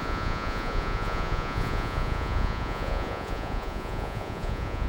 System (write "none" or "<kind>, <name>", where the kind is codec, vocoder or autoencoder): vocoder, Vocos